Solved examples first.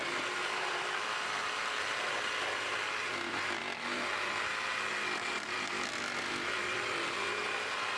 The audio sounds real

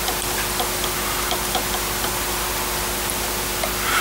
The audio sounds real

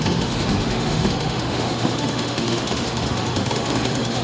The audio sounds fake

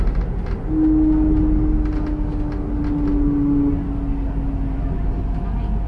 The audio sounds real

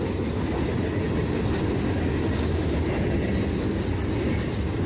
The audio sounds real